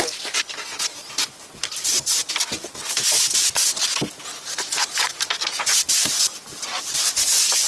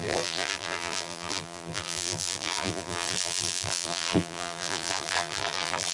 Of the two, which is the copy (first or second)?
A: second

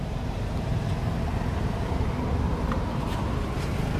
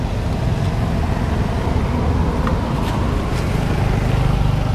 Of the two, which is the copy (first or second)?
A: first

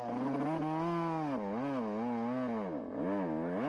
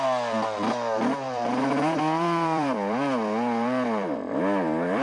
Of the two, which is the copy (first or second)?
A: second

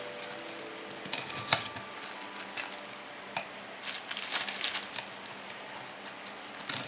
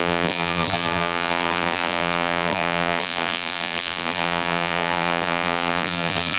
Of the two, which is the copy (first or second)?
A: second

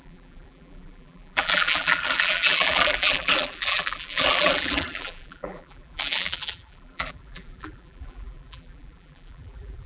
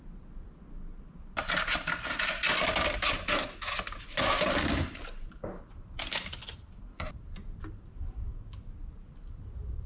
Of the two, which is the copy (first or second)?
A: first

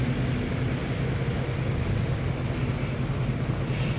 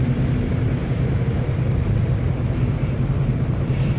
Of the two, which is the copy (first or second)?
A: second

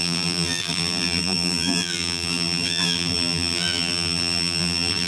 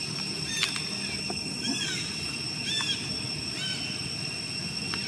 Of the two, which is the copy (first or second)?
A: first